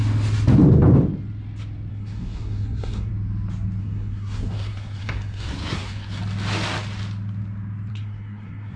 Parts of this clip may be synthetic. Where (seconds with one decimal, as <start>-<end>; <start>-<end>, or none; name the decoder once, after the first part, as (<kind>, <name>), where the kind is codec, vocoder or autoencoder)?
1.9-3.1 (codec, SNAC); 3.8-6.2; 7.9-8.8